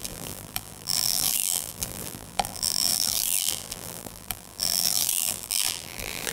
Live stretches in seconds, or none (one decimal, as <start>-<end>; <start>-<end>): none